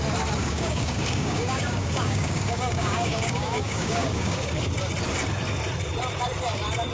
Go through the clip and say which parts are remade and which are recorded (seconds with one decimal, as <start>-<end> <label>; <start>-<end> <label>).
0.0-0.4 recorded; 0.4-4.5 remade; 4.5-6.9 recorded